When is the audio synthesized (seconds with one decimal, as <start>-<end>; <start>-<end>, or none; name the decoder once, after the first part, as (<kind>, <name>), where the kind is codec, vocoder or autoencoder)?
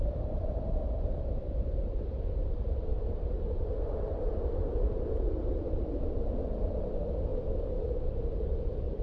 none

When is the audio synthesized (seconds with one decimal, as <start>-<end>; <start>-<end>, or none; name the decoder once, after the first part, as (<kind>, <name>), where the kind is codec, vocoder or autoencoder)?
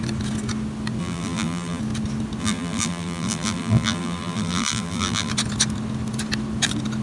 1.0-1.8 (vocoder, BigVGAN v2); 2.4-5.3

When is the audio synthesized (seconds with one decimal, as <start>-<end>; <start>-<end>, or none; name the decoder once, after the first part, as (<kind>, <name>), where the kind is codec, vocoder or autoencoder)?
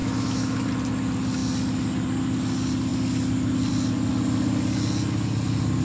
0.0-0.7 (autoencoder, DAC-VAE)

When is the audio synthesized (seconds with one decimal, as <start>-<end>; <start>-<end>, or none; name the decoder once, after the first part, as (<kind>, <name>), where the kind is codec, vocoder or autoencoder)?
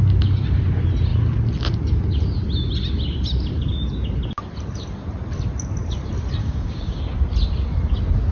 6.4-7.0 (codec, DAC)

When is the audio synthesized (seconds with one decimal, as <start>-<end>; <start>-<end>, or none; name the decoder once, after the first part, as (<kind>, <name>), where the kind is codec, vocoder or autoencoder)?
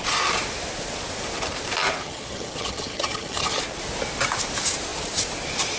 2.0-3.6 (vocoder, HiFi-GAN)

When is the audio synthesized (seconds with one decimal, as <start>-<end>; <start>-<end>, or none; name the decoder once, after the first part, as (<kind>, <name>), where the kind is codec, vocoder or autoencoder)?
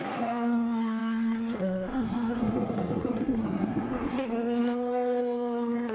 0.0-5.9 (codec, SNAC)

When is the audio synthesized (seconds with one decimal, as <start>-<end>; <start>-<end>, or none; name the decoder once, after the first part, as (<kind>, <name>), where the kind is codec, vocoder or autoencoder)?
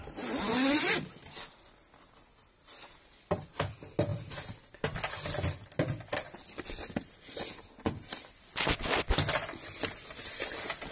none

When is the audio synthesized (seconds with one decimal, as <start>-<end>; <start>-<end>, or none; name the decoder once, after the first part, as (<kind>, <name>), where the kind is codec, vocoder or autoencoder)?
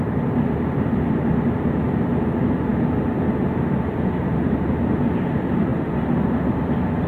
none